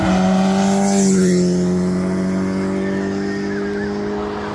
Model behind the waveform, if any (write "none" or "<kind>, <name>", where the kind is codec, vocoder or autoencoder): none